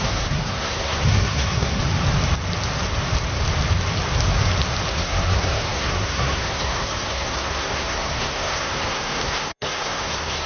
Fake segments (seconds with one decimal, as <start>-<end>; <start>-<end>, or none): 0.0-1.8; 4.9-10.5